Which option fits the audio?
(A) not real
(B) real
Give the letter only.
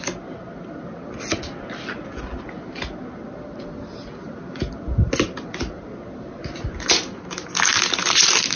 B